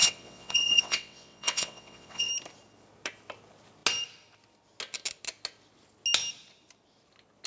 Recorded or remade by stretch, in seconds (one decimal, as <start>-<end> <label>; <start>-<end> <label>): 0.0-2.3 remade; 2.3-7.5 recorded